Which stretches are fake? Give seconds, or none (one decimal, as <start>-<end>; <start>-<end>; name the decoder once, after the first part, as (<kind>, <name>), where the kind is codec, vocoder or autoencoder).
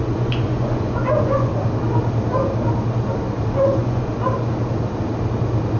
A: 0.0-1.5 (vocoder, Vocos); 3.5-4.1